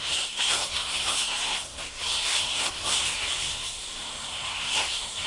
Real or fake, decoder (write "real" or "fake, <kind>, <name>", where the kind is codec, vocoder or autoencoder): fake, codec, SNAC